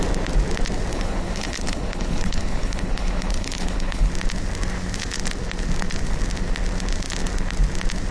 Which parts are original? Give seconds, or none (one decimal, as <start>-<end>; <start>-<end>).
0.0-0.9; 4.1-8.1